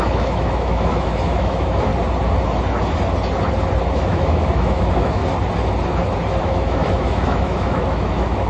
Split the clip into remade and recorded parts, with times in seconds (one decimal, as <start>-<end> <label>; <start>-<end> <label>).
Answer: 0.0-1.9 remade; 1.9-3.9 recorded; 3.9-5.2 remade; 5.2-6.4 recorded; 6.4-8.5 remade